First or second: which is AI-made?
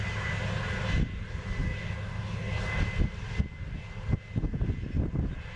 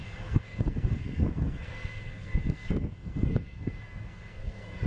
second